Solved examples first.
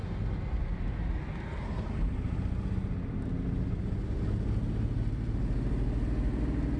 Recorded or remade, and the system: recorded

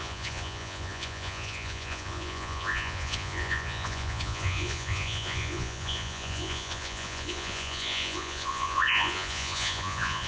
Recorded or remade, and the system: remade, vocoder, Vocos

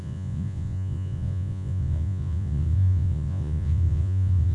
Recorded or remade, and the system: remade, vocoder, Vocos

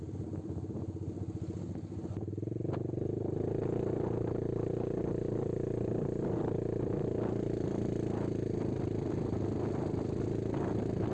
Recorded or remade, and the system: recorded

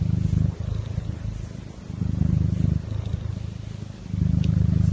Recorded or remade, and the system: recorded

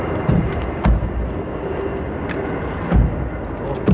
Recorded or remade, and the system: recorded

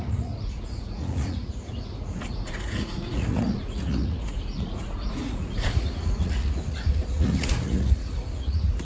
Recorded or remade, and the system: remade, vocoder, Vocos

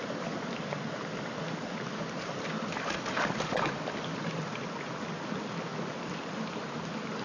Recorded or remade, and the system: recorded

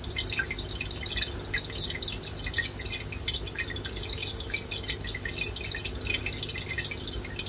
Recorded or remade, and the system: recorded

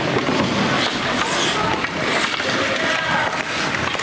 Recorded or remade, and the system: recorded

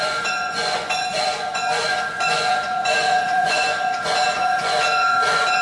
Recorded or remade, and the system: remade, vocoder, Vocos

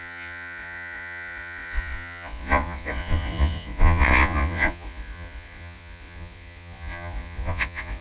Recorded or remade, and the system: remade, vocoder, Vocos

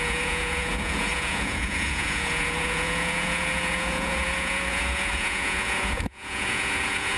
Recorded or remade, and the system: remade, vocoder, Vocos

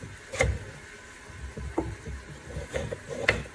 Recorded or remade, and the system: recorded